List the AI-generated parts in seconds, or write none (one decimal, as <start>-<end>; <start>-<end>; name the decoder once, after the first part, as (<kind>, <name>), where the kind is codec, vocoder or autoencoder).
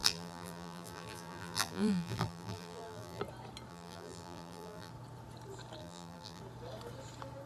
0.0-3.2 (vocoder, BigVGAN v2); 3.7-4.9; 5.8-6.4